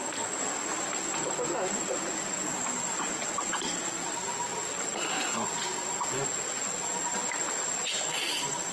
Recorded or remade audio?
recorded